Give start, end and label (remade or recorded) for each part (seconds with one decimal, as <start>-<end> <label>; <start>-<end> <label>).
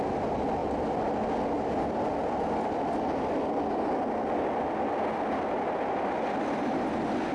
0.0-7.3 recorded